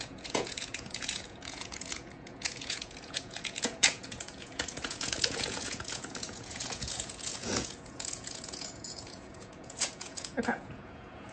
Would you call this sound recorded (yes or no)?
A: no